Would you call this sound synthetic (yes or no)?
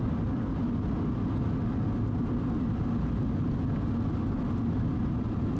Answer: no